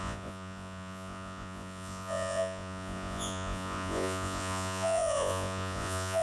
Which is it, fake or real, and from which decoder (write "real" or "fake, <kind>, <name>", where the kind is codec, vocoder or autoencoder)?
fake, vocoder, Vocos